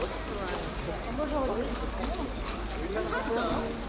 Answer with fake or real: real